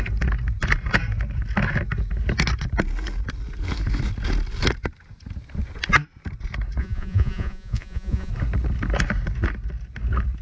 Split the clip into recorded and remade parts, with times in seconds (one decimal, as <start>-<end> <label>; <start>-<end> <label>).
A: 0.0-6.8 recorded; 6.8-8.3 remade; 8.3-10.4 recorded